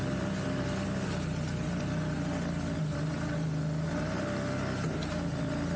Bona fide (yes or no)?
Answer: yes